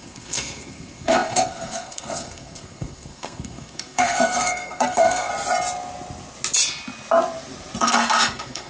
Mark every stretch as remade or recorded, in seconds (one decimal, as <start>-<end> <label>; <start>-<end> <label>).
0.0-5.3 remade; 5.3-7.8 recorded; 7.8-8.7 remade